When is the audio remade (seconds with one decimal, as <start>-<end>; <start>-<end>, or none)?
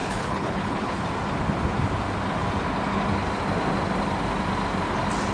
0.0-1.0